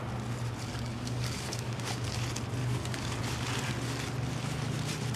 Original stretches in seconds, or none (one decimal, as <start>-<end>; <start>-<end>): 0.0-0.7; 1.9-2.6; 3.2-5.2